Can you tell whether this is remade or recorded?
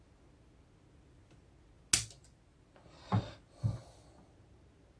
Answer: recorded